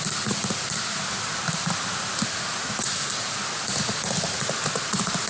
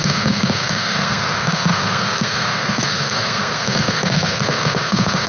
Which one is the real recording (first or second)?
first